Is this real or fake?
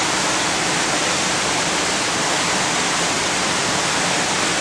real